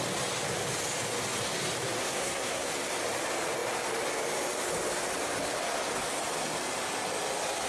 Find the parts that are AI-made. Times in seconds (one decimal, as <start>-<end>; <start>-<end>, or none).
2.0-2.7